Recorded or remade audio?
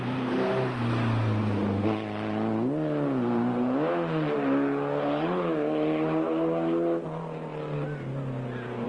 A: recorded